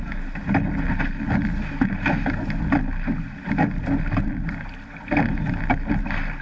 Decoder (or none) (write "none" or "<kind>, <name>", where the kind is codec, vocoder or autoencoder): none